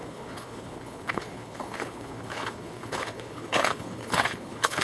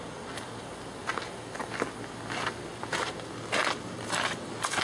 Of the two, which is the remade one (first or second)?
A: first